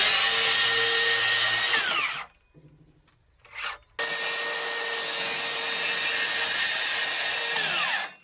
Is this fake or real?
real